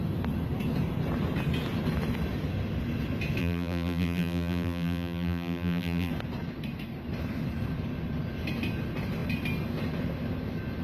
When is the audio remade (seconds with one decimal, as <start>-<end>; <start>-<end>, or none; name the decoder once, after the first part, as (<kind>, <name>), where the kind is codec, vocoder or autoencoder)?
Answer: 3.4-6.1 (vocoder, BigVGAN v2)